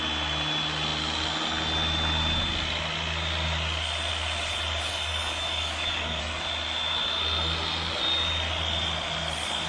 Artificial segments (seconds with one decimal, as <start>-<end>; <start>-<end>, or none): 4.9-6.2